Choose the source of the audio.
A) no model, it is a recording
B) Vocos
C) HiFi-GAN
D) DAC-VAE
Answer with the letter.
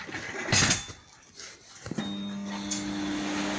A